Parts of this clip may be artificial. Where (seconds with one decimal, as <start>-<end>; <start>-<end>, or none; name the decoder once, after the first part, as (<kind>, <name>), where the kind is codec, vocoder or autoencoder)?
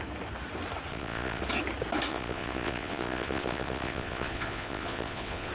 0.9-1.4 (vocoder, Vocos); 2.1-5.5